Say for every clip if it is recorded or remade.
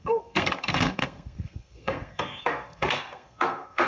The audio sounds remade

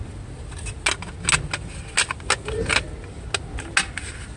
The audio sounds recorded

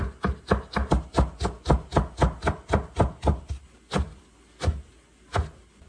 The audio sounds recorded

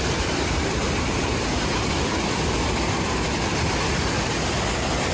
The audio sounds recorded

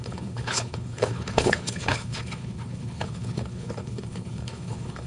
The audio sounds remade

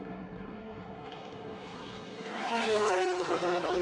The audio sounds remade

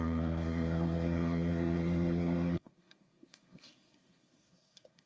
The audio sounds remade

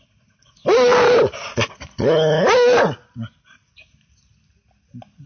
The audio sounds recorded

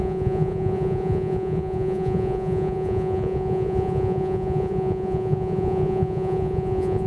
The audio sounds remade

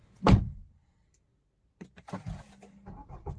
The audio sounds recorded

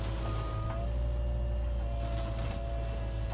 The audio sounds recorded